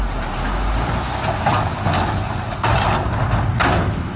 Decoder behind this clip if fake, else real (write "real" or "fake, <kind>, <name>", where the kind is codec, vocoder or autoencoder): real